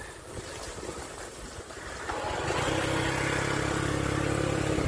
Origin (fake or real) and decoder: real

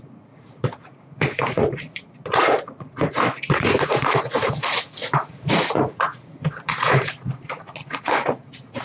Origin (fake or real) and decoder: fake, vocoder, Vocos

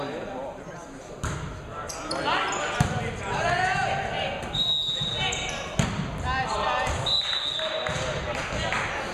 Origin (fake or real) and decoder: real